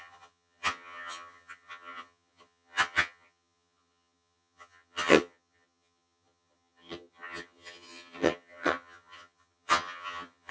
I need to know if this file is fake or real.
fake